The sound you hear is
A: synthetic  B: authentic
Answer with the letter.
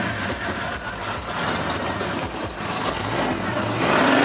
B